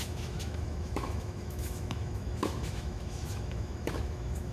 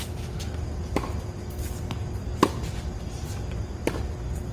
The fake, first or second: first